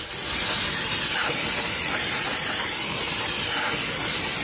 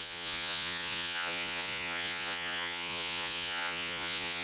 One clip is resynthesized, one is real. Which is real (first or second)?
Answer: first